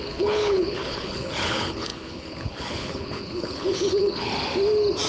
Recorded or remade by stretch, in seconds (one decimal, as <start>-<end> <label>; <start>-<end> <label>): 0.0-4.3 remade; 4.3-5.1 recorded